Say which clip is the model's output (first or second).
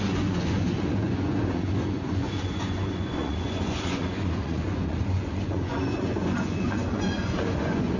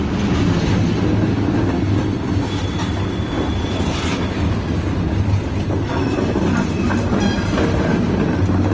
first